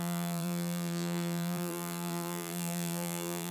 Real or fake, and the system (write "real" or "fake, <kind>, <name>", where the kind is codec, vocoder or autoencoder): fake, vocoder, BigVGAN v2